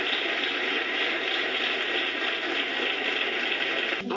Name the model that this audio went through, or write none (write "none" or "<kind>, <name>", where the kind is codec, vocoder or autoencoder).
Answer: none